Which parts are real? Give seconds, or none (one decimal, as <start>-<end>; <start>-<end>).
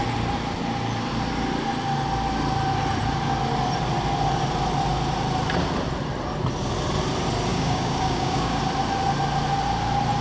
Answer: 0.0-7.5; 8.6-10.2